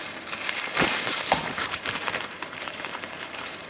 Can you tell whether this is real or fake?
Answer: fake